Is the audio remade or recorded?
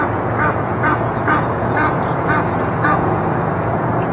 remade